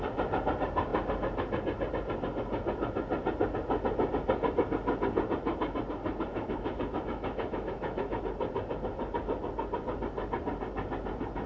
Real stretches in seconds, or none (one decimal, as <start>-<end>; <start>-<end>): 0.0-6.3; 8.2-11.5